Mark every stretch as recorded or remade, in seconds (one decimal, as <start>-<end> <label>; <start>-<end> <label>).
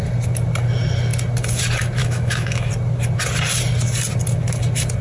0.0-2.0 recorded; 2.0-2.7 remade; 2.7-5.0 recorded